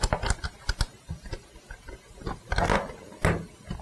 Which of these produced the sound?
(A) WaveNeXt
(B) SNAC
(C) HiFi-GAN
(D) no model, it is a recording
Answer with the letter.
D